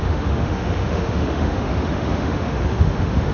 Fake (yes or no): yes